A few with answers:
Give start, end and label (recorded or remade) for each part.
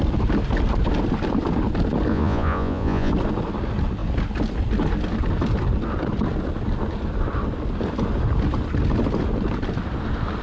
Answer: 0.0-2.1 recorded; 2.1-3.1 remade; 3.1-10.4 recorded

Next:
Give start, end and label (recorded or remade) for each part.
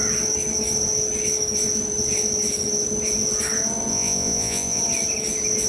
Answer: 0.0-3.9 recorded; 3.9-4.8 remade; 4.8-5.7 recorded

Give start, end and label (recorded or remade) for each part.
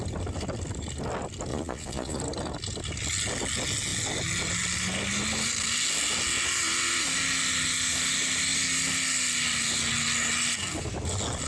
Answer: 0.0-1.5 recorded; 1.5-2.2 remade; 2.2-11.5 recorded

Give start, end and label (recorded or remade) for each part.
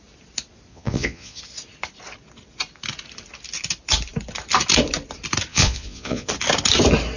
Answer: 0.0-0.7 recorded; 0.7-1.4 remade; 1.4-5.5 recorded; 5.5-6.3 remade; 6.3-7.2 recorded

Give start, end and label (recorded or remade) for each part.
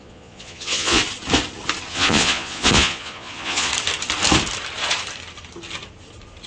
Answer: 0.0-1.0 remade; 1.0-1.9 recorded; 1.9-3.7 remade; 3.7-6.5 recorded